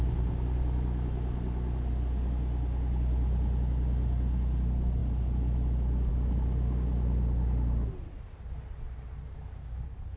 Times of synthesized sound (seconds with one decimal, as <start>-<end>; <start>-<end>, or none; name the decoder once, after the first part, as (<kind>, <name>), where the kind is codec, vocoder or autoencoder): none